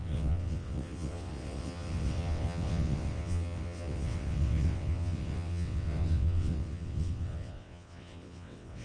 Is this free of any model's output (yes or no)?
no